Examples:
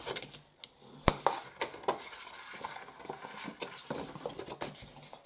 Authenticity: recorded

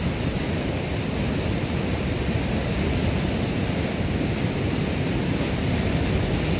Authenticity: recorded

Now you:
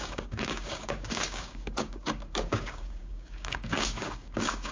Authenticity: remade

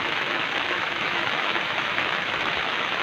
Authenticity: remade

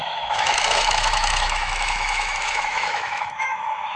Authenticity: remade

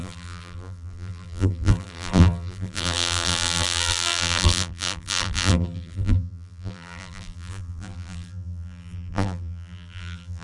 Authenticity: remade